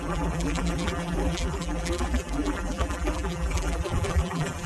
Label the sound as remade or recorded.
remade